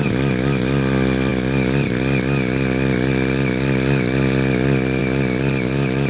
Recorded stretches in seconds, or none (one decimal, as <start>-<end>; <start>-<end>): 0.0-6.1